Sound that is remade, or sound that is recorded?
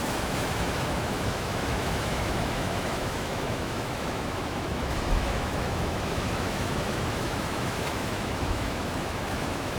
remade